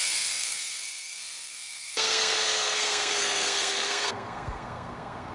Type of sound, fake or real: fake